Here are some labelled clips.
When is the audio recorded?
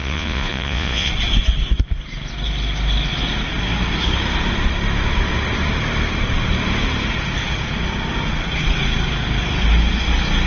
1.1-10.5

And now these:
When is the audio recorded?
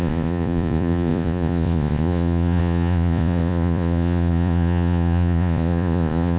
none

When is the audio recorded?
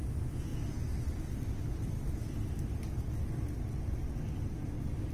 0.0-5.1